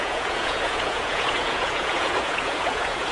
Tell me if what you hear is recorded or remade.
remade